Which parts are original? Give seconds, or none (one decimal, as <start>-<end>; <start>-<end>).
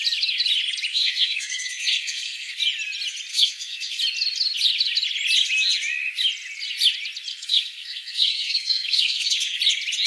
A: 0.0-0.9; 2.6-3.3; 4.0-7.3; 9.6-10.1